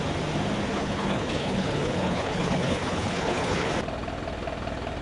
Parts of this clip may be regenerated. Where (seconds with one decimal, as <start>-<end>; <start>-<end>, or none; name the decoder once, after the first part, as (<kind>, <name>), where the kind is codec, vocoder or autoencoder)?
0.7-3.7 (codec, HILCodec)